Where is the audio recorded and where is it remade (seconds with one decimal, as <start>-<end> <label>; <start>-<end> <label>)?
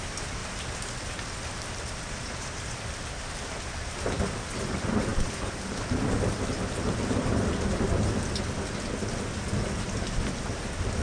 0.0-11.0 recorded